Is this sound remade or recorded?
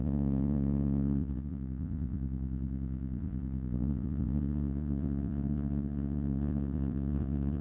remade